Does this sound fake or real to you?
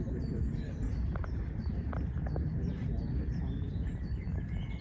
real